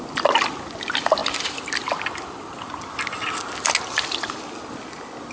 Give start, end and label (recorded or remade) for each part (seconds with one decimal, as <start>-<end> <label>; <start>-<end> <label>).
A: 0.0-5.3 recorded